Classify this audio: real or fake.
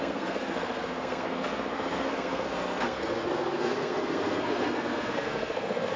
fake